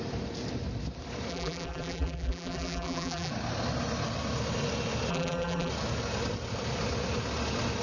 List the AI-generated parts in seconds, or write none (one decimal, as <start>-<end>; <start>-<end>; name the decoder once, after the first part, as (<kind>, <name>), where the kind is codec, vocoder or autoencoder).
1.3-3.3 (vocoder, BigVGAN v2); 5.1-5.7